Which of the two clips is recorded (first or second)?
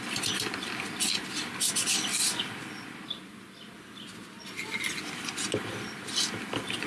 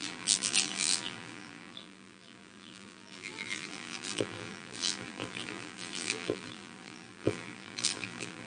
first